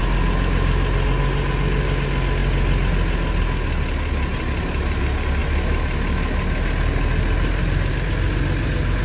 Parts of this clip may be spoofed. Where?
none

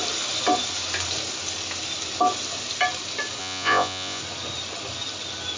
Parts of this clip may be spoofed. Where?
3.4-4.2 (vocoder, Vocos)